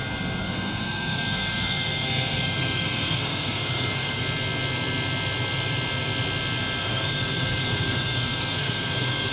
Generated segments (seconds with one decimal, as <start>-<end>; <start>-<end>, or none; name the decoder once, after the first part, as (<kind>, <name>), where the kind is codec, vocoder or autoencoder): 0.4-4.2 (codec, SNAC); 6.8-9.3